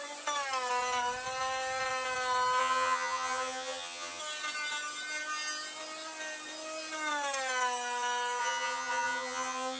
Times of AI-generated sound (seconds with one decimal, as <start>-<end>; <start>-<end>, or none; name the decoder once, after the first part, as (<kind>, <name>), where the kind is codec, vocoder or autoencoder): 2.6-4.2 (vocoder, HiFi-GAN); 8.4-9.8